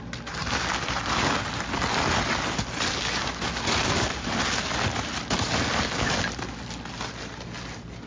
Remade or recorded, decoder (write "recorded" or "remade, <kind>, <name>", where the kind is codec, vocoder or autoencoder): recorded